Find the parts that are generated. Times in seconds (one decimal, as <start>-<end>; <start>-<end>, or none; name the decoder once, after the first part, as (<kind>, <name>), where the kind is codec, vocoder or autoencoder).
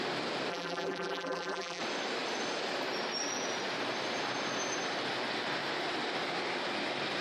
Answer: 0.5-1.8 (vocoder, BigVGAN v2)